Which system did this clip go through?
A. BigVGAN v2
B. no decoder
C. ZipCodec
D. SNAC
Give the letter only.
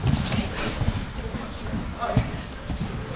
B